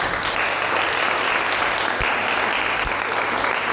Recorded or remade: recorded